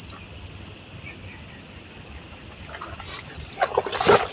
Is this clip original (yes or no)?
yes